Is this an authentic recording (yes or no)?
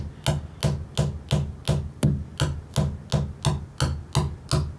yes